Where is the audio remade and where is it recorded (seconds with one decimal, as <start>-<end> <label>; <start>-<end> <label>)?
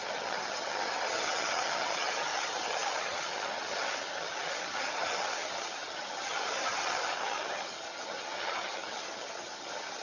0.0-10.0 remade